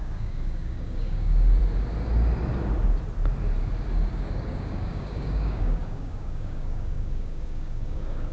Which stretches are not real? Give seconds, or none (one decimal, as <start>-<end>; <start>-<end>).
0.0-1.6; 4.1-8.3